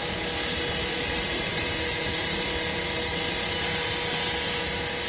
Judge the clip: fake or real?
real